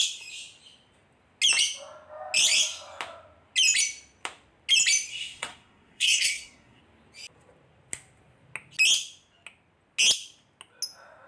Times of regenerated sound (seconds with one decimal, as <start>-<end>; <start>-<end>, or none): 5.1-6.8